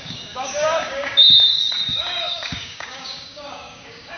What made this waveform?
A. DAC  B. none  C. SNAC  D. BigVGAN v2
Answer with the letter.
A